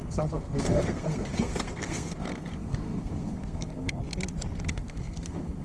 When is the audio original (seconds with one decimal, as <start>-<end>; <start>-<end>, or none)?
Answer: 4.0-4.7